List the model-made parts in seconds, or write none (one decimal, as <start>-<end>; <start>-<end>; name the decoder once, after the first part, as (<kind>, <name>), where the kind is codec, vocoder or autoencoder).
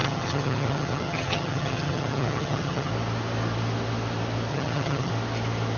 0.0-2.9 (vocoder, HiFi-GAN); 4.5-5.1